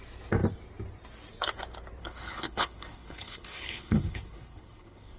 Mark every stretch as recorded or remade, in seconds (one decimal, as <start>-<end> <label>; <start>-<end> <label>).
0.0-2.0 recorded; 2.0-5.2 remade